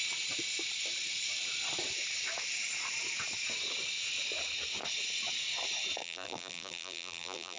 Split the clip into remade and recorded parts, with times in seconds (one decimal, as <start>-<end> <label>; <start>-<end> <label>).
0.0-6.0 recorded; 6.0-7.6 remade